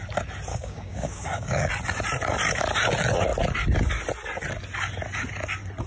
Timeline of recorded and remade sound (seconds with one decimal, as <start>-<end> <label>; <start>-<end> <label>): 0.0-0.5 recorded; 0.5-1.7 remade; 1.7-5.9 recorded